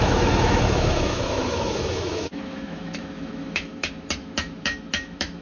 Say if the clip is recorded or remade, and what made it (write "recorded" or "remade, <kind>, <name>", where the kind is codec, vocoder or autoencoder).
remade, autoencoder, DAC-VAE